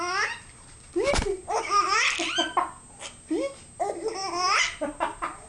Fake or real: real